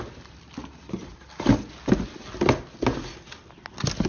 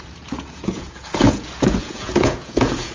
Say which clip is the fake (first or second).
second